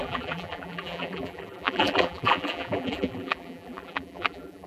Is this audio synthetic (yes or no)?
yes